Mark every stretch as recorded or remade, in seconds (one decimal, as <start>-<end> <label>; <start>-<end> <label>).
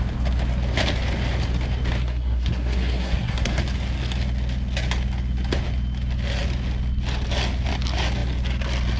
0.0-2.0 recorded; 2.0-3.6 remade; 3.6-9.0 recorded